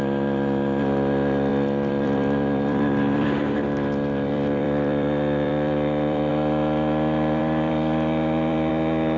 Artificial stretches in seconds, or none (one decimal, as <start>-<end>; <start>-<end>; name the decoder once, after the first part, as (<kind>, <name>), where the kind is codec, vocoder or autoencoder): 1.5-6.3 (vocoder, BigVGAN v2); 7.4-8.7